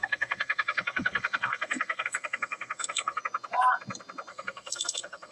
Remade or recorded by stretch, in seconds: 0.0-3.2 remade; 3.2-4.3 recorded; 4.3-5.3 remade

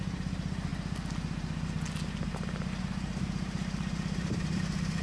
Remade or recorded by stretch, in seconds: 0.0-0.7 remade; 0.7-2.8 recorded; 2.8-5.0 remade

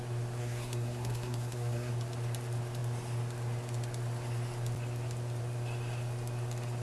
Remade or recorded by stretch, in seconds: 0.0-0.4 recorded; 0.4-1.9 remade; 1.9-6.8 recorded

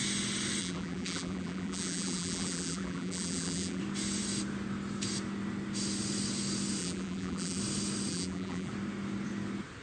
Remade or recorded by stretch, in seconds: 0.0-0.6 recorded; 0.6-3.8 remade; 3.8-6.8 recorded; 6.8-7.6 remade; 7.6-8.1 recorded; 8.1-8.7 remade; 8.7-9.8 recorded